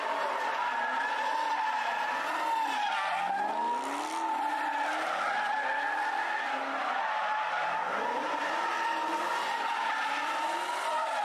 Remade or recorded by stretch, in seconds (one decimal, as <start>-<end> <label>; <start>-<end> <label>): 0.0-11.2 recorded